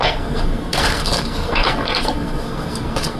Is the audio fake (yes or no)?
yes